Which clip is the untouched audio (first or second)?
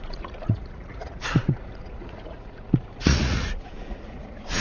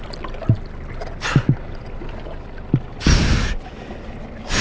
second